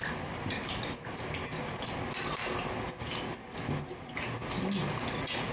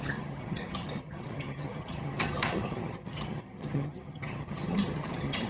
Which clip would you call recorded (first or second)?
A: first